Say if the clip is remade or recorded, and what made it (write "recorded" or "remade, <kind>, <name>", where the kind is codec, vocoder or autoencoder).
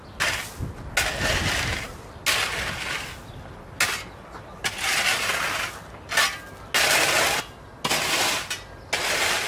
recorded